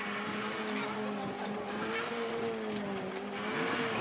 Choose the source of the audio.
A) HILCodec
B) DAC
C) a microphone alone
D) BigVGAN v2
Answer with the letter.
C